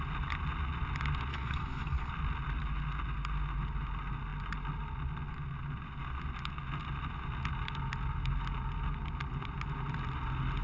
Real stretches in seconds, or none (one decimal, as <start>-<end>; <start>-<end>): 0.0-1.3; 2.1-10.6